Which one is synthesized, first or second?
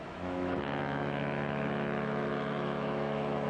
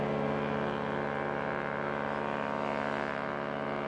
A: first